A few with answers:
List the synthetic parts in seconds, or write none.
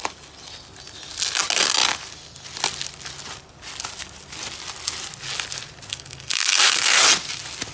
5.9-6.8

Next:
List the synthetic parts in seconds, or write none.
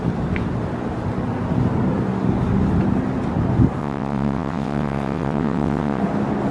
3.8-6.0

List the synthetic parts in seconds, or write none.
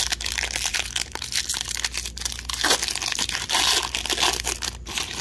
none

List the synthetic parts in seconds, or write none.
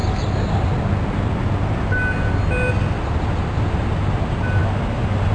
none